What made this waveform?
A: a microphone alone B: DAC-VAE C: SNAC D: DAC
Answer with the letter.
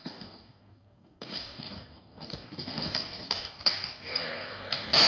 D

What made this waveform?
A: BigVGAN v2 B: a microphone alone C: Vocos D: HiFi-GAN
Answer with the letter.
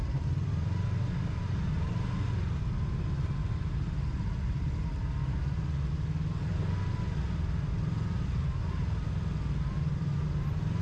B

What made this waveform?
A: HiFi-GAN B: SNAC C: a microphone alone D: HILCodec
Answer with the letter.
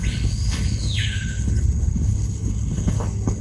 D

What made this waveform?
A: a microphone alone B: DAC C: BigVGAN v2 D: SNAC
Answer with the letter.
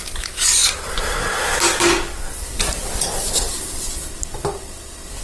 A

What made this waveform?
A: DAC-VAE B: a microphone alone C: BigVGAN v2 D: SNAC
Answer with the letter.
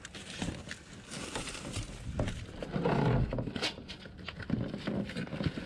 B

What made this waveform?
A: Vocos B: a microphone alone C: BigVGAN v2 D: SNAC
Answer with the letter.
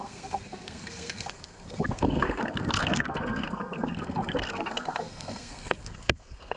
D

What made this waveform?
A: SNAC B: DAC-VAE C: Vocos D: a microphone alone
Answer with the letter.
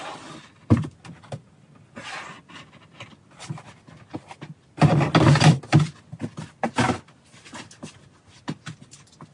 D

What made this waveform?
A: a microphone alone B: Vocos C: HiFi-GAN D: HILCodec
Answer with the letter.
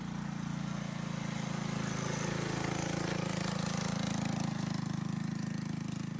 A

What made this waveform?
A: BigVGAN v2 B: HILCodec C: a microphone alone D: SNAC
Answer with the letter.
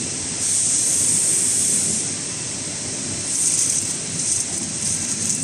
A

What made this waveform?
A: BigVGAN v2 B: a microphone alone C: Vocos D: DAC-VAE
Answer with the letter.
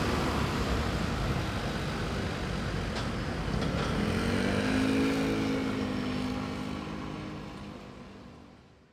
B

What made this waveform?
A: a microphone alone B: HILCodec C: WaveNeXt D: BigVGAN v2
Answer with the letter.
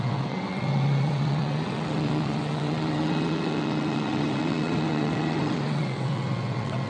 C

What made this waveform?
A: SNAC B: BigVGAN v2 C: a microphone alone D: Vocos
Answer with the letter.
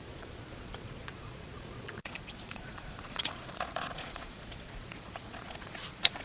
D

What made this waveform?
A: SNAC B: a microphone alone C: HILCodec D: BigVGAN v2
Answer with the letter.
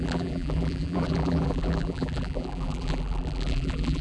D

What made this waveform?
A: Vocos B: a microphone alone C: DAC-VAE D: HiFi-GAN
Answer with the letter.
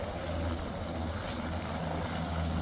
B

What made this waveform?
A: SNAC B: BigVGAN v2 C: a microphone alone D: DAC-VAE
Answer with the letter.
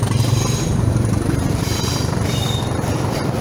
B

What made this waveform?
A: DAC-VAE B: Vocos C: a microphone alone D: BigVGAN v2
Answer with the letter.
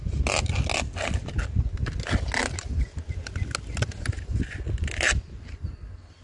C